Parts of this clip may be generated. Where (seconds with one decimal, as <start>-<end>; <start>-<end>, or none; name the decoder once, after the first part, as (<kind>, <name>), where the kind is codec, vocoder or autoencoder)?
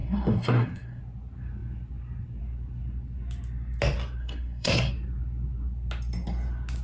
0.0-1.0 (codec, SNAC); 4.2-4.9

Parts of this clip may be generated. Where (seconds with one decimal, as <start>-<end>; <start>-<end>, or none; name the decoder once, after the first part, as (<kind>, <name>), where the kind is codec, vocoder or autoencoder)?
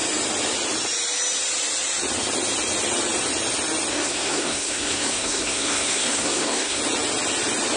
3.9-6.8 (codec, SNAC)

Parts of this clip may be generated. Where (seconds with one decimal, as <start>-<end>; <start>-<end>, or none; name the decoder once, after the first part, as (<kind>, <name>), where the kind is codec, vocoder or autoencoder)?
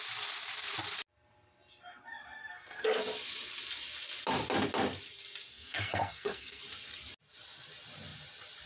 2.4-3.0 (codec, SNAC); 5.5-6.6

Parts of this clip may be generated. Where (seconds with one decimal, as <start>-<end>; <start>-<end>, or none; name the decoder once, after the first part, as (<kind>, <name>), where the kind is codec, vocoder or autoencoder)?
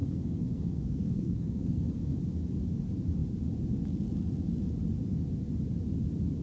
0.0-2.2 (codec, SNAC)